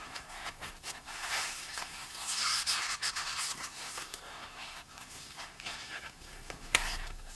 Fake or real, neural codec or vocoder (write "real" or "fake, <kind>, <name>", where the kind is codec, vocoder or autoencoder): fake, codec, SNAC